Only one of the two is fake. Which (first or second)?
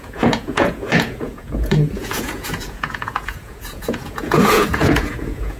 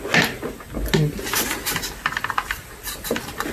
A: first